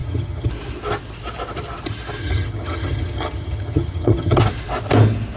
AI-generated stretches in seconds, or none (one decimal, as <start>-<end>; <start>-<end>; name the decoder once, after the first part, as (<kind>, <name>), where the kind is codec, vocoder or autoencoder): 0.0-0.5 (vocoder, HiFi-GAN); 2.2-4.4

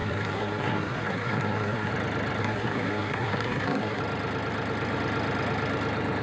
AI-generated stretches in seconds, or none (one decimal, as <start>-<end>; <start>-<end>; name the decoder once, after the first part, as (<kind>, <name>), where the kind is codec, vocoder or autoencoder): 0.0-1.9 (codec, SNAC); 2.4-4.0

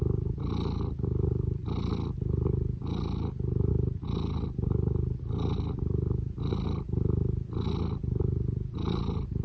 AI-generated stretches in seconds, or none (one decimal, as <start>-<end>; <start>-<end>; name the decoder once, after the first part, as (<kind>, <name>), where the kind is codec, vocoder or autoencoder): none

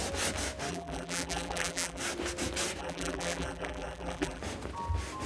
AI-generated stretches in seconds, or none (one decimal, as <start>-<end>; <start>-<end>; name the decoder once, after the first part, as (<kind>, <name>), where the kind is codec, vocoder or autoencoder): 0.7-2.0 (vocoder, BigVGAN v2); 2.8-4.4

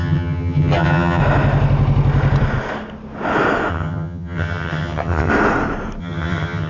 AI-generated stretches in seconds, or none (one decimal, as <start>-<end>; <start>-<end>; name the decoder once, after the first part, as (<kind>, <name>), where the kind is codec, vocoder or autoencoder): 0.0-1.2 (vocoder, HiFi-GAN); 3.7-5.3; 6.0-6.7

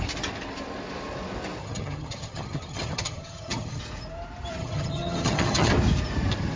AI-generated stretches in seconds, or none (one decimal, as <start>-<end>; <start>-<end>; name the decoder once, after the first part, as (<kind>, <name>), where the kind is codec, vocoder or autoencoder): 1.6-3.8 (vocoder, HiFi-GAN); 4.6-5.7